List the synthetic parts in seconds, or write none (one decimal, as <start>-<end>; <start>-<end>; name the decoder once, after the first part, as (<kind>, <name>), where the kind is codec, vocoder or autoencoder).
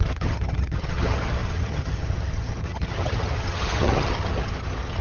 0.0-5.0 (vocoder, HiFi-GAN)